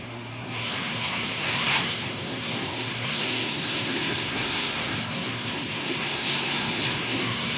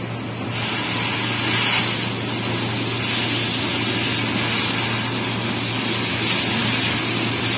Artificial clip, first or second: first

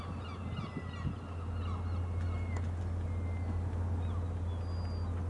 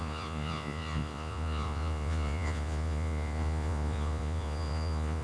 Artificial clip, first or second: second